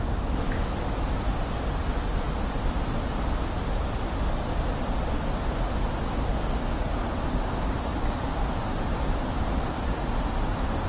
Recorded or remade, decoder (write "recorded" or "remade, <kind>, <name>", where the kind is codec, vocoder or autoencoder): recorded